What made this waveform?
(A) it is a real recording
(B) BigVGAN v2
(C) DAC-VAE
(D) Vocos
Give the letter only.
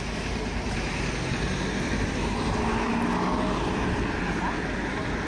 A